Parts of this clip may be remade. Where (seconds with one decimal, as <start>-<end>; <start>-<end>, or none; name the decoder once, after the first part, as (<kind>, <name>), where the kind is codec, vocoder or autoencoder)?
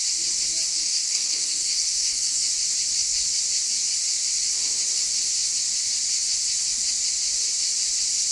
0.7-2.5 (codec, SNAC)